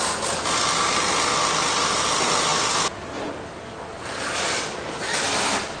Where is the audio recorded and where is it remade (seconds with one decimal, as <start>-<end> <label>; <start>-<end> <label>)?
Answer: 0.0-5.8 recorded